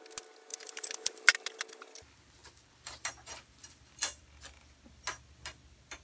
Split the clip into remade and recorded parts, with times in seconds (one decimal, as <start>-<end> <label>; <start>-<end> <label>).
0.0-0.5 recorded; 0.5-1.3 remade; 1.3-2.4 recorded; 2.4-3.1 remade; 3.1-3.6 recorded; 3.6-4.2 remade; 4.2-6.0 recorded